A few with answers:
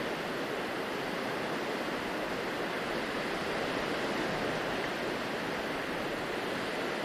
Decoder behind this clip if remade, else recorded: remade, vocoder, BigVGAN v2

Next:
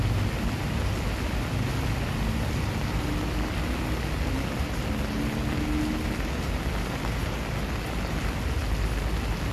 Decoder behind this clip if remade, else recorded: recorded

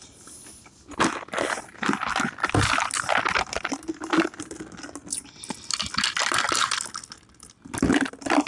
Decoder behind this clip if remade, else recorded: recorded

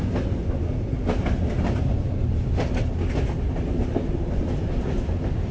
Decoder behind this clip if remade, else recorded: recorded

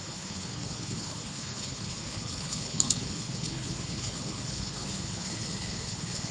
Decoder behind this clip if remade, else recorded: remade, codec, HILCodec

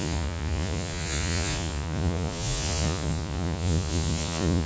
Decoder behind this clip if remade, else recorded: remade, vocoder, Vocos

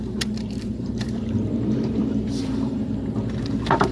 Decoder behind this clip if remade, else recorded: remade, vocoder, BigVGAN v2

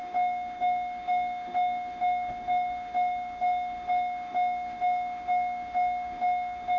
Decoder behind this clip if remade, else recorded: remade, autoencoder, DAC-VAE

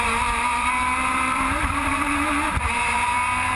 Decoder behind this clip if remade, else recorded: remade, vocoder, BigVGAN v2